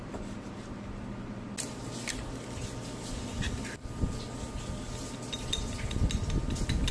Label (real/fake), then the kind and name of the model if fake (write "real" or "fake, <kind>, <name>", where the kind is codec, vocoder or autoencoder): real